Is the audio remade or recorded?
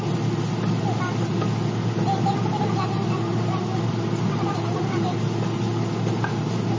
recorded